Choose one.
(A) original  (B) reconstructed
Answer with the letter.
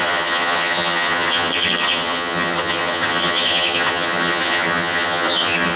B